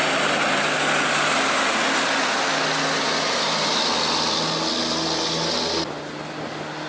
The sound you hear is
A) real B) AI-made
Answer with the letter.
A